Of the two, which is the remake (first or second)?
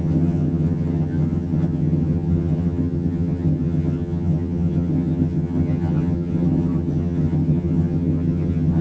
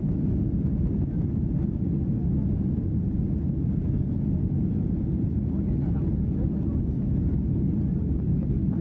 first